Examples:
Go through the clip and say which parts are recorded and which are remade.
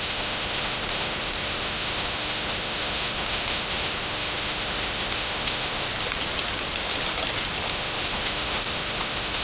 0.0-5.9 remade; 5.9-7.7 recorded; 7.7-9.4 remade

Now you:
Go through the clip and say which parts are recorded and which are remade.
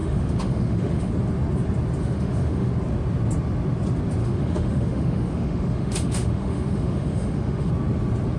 0.0-1.1 remade; 1.1-2.0 recorded; 2.0-2.7 remade; 2.7-4.2 recorded; 4.2-7.7 remade; 7.7-8.4 recorded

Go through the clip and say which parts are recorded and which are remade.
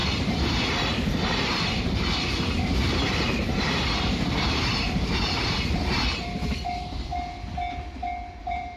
0.0-7.1 remade; 7.1-8.4 recorded; 8.4-8.8 remade